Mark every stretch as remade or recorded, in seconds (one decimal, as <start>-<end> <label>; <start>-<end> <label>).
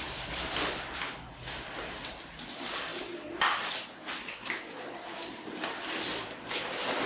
0.0-7.1 recorded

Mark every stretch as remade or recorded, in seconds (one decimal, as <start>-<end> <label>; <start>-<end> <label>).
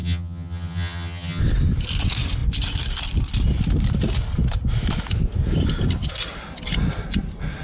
0.0-1.4 remade; 1.4-7.6 recorded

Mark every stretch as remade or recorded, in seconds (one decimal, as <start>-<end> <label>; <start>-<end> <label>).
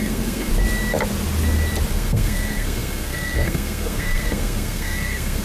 0.0-0.5 remade; 0.5-1.9 recorded; 1.9-5.4 remade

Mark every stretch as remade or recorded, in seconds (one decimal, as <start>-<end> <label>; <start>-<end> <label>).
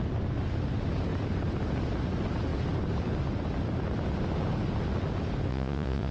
0.0-5.5 recorded; 5.5-6.1 remade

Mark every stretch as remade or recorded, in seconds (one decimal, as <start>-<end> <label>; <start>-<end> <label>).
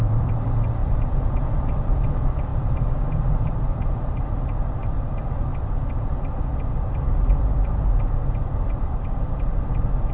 0.0-5.5 remade; 5.5-10.1 recorded